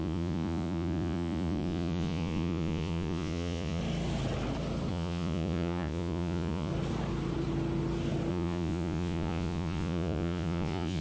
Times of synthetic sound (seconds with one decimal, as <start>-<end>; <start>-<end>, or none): 0.0-3.8; 4.9-6.7; 8.3-11.0